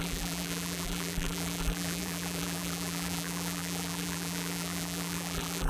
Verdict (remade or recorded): remade